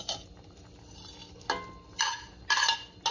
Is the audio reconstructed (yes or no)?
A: no